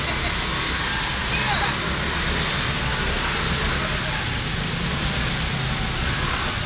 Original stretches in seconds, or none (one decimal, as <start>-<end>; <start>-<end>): 0.0-6.7